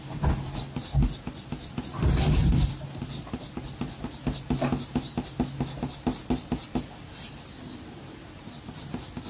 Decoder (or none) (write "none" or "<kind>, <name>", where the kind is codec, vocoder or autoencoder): none